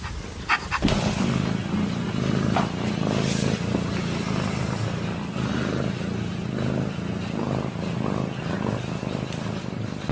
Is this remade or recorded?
recorded